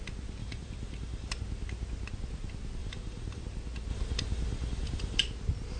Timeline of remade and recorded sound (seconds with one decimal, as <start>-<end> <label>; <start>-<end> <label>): 0.0-0.4 recorded; 0.4-1.3 remade; 1.3-2.8 recorded; 2.8-3.4 remade; 3.4-3.9 recorded; 3.9-5.2 remade; 5.2-5.8 recorded